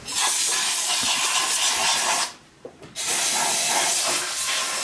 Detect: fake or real real